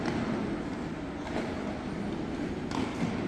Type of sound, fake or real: real